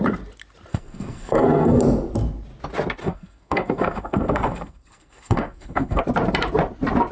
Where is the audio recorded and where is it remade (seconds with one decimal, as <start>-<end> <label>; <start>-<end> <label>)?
0.0-0.7 recorded; 0.7-1.8 remade; 1.8-3.0 recorded; 3.0-6.0 remade; 6.0-7.1 recorded

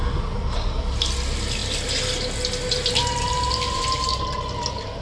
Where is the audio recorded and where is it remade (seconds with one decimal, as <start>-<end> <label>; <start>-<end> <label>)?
0.0-5.0 recorded

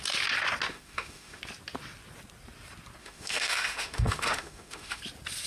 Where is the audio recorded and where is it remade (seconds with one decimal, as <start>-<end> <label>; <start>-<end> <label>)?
0.0-0.7 recorded; 0.7-1.4 remade; 1.4-3.0 recorded; 3.0-5.0 remade; 5.0-5.5 recorded

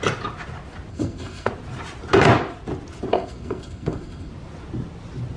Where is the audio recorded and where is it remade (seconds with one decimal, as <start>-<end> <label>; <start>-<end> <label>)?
0.0-0.9 recorded; 0.9-1.5 remade; 1.5-3.1 recorded; 3.1-4.3 remade; 4.3-5.4 recorded

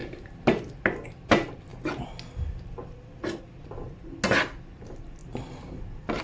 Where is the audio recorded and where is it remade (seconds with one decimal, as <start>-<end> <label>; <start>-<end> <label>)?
0.0-6.2 recorded

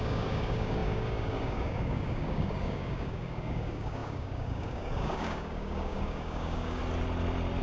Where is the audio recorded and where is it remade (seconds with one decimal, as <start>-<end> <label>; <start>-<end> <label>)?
0.0-6.8 remade; 6.8-7.6 recorded

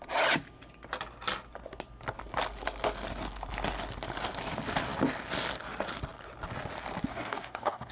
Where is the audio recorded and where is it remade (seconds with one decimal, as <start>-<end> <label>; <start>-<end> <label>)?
0.0-7.1 recorded; 7.1-7.9 remade